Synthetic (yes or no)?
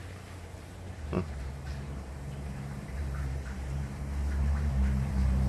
yes